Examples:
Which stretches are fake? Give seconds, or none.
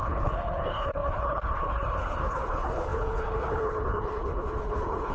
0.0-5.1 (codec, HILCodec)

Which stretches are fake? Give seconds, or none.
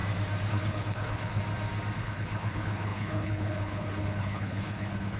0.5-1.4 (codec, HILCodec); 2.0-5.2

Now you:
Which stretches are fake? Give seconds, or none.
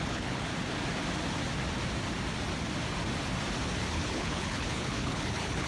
0.0-0.5 (codec, HILCodec); 3.9-5.7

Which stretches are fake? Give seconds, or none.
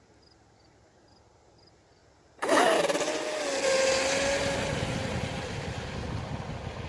none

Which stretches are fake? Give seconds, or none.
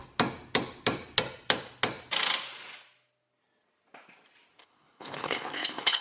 4.6-6.0 (codec, HILCodec)